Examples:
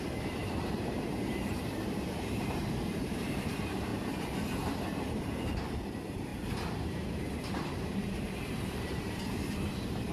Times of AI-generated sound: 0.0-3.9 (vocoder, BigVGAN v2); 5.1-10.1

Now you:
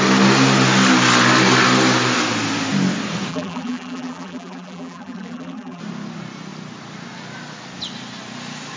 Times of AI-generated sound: 3.3-5.8 (vocoder, BigVGAN v2)

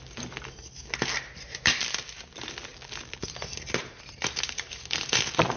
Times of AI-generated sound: none

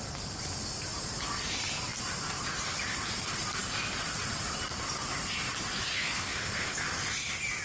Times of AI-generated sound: 5.9-6.8 (codec, HILCodec)

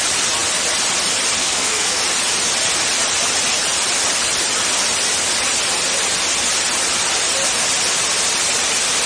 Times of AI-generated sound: 1.4-2.0 (codec, SNAC)

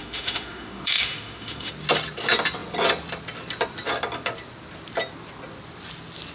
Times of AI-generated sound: 0.0-1.7 (autoencoder, DAC-VAE)

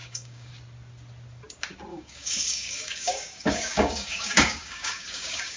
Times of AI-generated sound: 0.0-0.5 (codec, DAC); 1.9-5.6

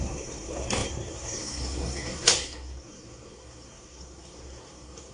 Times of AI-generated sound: 0.0-5.1 (codec, SNAC)